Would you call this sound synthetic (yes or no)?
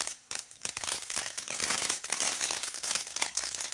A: yes